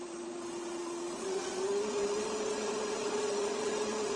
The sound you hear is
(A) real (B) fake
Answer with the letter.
B